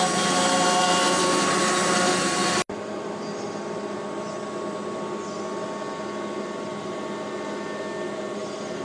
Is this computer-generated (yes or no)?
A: no